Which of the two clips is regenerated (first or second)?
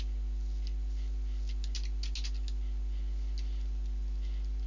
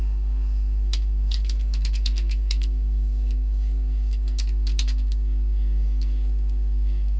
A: second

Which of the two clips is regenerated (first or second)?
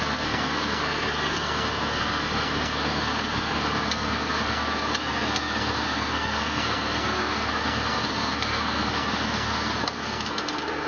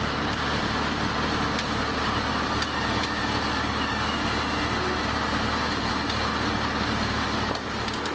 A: first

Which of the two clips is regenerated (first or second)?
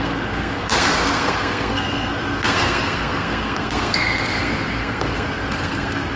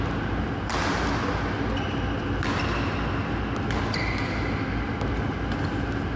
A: first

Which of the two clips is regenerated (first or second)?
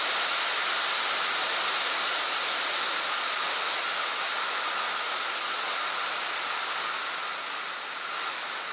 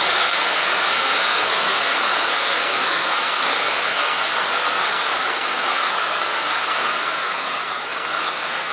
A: second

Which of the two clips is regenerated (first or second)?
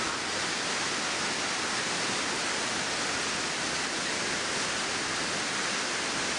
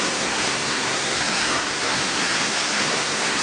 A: second